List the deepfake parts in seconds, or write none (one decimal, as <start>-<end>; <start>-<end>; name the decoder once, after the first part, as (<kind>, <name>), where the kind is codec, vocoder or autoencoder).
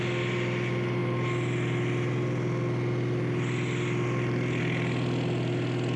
none